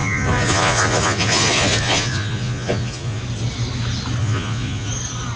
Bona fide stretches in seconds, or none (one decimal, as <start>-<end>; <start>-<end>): 3.2-4.2; 4.9-5.4